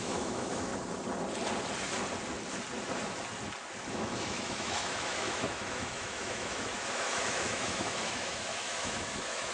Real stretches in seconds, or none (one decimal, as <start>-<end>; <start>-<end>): 0.7-3.9